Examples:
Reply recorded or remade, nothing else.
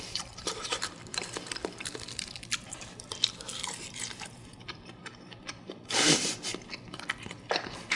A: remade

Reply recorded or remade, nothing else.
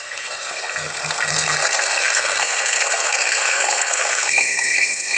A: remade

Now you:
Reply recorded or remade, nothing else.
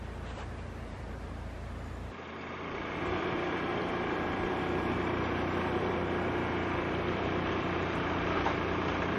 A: remade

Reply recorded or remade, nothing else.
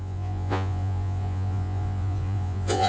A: remade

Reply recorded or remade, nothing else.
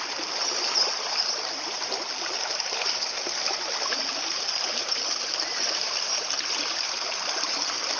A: recorded